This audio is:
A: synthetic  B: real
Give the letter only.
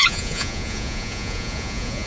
A